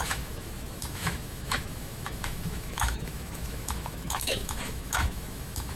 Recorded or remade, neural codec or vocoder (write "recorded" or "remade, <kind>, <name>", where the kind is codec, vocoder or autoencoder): remade, autoencoder, DAC-VAE